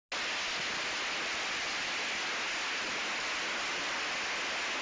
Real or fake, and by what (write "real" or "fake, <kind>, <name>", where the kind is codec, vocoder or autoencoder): real